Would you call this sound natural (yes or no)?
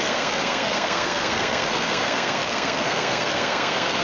no